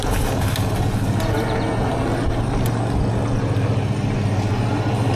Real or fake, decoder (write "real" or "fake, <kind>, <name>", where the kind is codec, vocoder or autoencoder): real